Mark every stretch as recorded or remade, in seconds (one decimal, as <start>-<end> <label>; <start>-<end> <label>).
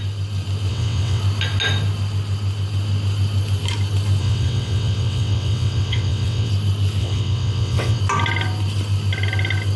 0.0-0.7 recorded; 0.7-1.2 remade; 1.2-4.2 recorded; 4.2-6.5 remade; 6.5-7.0 recorded; 7.0-8.0 remade; 8.0-9.8 recorded